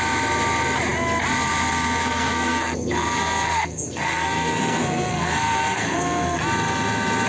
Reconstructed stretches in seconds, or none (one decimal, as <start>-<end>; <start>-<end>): 2.0-6.4